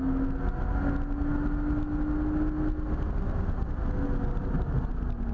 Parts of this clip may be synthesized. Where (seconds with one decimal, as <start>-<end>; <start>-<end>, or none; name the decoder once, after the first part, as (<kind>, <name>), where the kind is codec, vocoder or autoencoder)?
none